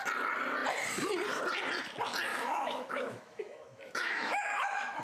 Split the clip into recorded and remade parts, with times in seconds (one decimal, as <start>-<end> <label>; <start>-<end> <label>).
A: 0.0-2.3 recorded; 2.3-5.0 remade